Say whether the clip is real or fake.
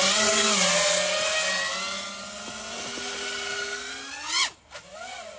real